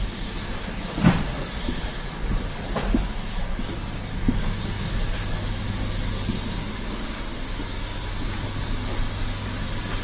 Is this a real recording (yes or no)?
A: yes